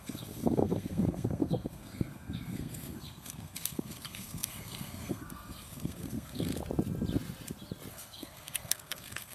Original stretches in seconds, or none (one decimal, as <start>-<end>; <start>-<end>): 6.5-7.9